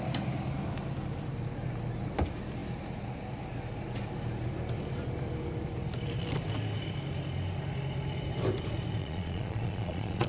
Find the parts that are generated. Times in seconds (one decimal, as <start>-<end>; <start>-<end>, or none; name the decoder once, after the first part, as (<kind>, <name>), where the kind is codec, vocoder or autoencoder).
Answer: 9.0-10.3 (vocoder, Vocos)